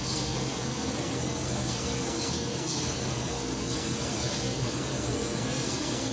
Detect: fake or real fake